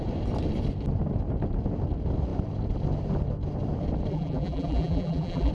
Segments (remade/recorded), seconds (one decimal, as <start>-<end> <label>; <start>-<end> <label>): 0.0-4.1 recorded; 4.1-5.5 remade